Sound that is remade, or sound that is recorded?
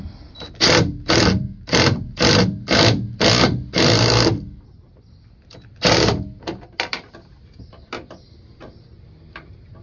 recorded